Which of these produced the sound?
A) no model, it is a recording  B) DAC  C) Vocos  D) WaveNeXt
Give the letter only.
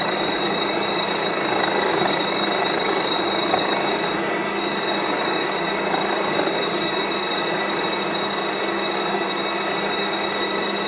B